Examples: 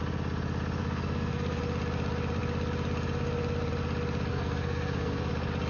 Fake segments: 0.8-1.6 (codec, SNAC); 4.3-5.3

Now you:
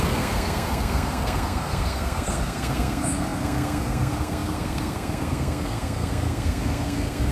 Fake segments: 0.0-7.3 (codec, SNAC)

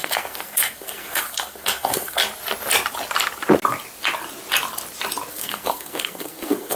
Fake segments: 0.0-2.2 (codec, SNAC); 5.3-6.8

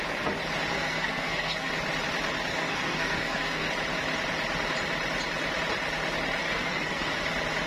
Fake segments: 0.7-1.7 (codec, SNAC); 2.5-3.7; 6.4-7.2

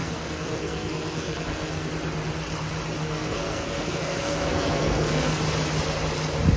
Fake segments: 0.0-1.9 (codec, SNAC); 3.0-5.4

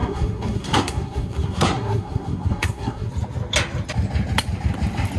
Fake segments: 0.0-3.1 (codec, SNAC)

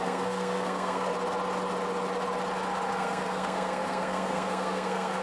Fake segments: 0.0-1.1 (codec, SNAC); 2.9-5.2

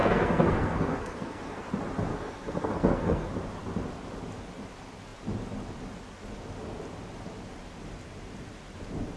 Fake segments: 0.0-1.7 (codec, SNAC); 2.1-3.3